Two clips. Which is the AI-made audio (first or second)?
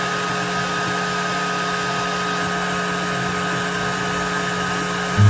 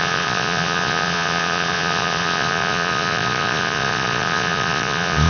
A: second